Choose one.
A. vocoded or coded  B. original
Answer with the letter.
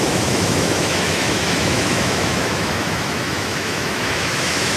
A